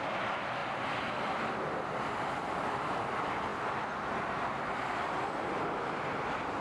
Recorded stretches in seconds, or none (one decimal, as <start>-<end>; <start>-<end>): 0.0-0.6; 3.0-6.6